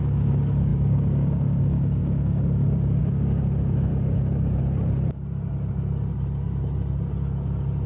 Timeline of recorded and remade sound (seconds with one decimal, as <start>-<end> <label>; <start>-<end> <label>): 0.0-3.9 remade; 3.9-7.9 recorded